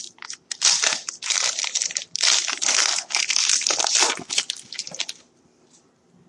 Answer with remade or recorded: recorded